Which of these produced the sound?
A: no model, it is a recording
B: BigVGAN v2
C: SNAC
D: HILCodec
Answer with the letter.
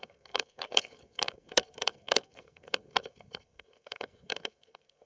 C